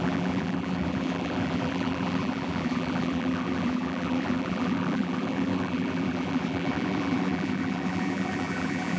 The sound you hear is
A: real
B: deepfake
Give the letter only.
B